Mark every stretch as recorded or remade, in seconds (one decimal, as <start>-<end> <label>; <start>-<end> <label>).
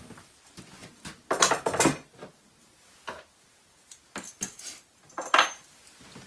0.0-5.2 recorded; 5.2-5.8 remade; 5.8-6.3 recorded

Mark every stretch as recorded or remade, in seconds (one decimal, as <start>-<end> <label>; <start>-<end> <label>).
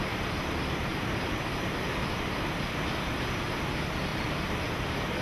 0.0-0.9 recorded; 0.9-3.5 remade; 3.5-4.1 recorded; 4.1-4.6 remade; 4.6-5.2 recorded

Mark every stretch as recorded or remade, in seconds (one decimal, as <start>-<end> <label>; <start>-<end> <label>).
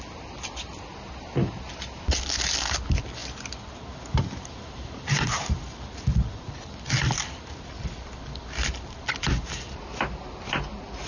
0.0-11.1 recorded